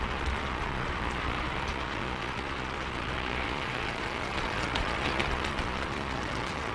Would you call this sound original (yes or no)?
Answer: no